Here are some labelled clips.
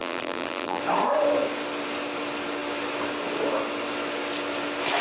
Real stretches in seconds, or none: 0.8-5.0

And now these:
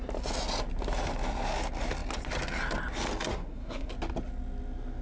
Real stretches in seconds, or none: 0.0-3.3; 3.9-5.0

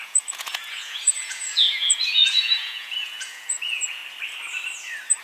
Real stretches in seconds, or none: 4.0-5.2

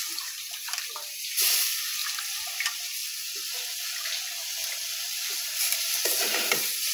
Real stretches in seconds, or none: 2.0-2.5; 3.0-4.6